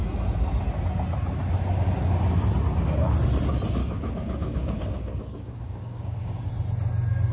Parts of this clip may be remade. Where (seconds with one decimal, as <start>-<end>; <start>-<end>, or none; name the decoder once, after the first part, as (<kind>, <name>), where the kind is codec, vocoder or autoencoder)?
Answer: 3.8-6.5 (codec, DAC)